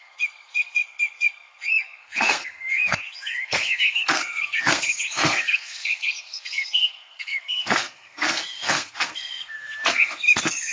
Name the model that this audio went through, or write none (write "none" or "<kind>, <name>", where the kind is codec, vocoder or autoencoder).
codec, SNAC